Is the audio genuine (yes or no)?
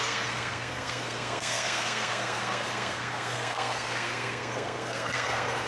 no